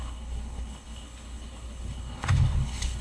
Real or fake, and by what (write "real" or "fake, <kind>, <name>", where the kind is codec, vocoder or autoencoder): fake, codec, HILCodec